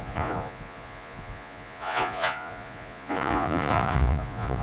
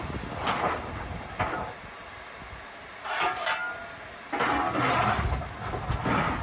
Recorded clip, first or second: second